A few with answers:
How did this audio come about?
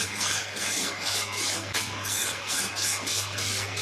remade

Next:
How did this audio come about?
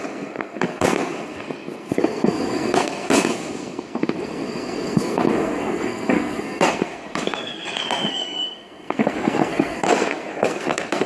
remade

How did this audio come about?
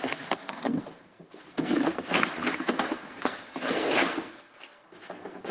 remade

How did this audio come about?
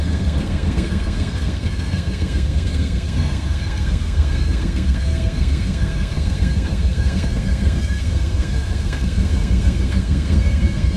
remade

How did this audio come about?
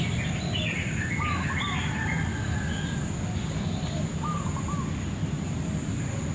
recorded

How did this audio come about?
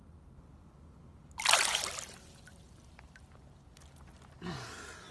recorded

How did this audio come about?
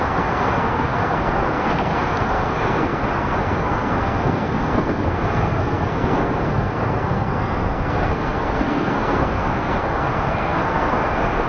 remade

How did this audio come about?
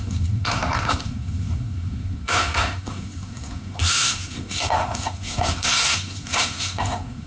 remade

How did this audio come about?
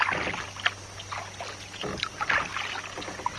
recorded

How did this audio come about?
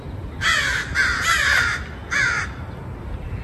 recorded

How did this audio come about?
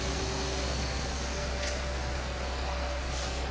remade